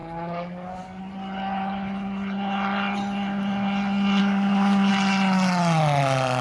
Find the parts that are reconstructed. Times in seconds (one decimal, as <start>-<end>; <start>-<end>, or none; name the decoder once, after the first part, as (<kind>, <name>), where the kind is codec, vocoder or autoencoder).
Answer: 0.0-1.0 (codec, DAC); 4.2-4.9